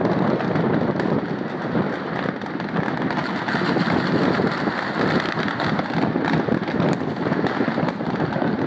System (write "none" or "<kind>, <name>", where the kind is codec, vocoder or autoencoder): none